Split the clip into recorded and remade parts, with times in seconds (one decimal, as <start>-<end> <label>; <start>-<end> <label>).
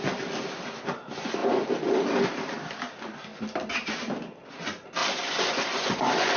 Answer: 0.0-5.0 recorded; 5.0-6.4 remade